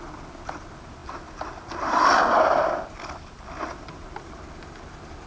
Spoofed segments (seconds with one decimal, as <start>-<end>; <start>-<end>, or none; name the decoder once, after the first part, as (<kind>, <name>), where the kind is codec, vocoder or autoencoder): none